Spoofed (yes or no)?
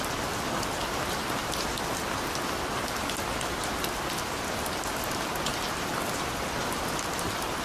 no